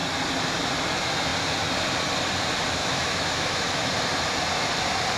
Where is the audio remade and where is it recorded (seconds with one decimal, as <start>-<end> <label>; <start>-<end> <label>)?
0.0-2.8 recorded; 2.8-3.9 remade; 3.9-5.2 recorded